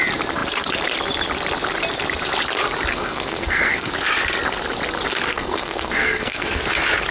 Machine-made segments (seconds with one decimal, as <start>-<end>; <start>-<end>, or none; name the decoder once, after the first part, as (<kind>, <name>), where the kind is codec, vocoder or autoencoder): 2.9-3.9 (codec, SNAC); 5.3-6.6

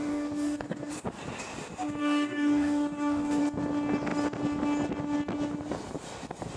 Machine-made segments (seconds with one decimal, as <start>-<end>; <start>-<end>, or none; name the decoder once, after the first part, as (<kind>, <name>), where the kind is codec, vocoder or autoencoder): 0.0-0.9 (codec, DAC); 2.0-3.4

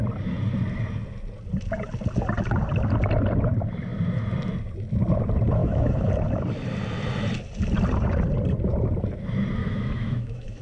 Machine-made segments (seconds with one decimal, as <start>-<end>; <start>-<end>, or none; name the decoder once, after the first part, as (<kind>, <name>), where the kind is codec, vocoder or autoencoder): 5.6-6.1 (autoencoder, DAC-VAE); 9.6-10.6

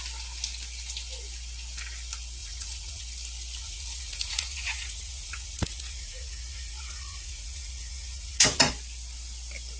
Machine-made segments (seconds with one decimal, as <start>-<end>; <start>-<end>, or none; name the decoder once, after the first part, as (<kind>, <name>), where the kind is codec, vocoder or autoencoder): 2.4-3.0 (vocoder, Vocos); 3.6-8.7

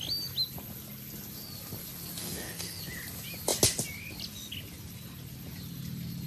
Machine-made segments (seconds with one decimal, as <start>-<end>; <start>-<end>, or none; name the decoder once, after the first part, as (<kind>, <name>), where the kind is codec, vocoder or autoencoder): 2.2-2.8 (codec, SNAC)

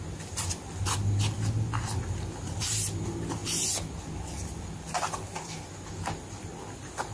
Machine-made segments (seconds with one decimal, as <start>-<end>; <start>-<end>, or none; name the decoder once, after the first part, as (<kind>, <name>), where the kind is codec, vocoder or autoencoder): none

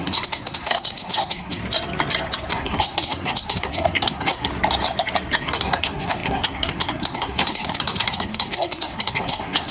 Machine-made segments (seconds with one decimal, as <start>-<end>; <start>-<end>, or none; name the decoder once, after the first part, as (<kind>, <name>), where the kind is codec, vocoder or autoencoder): 0.0-1.6 (codec, SNAC); 2.5-4.5; 5.4-9.7

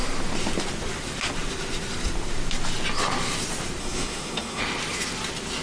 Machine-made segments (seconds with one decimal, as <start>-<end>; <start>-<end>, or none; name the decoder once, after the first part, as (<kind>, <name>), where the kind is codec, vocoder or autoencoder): 3.8-4.6 (codec, SNAC)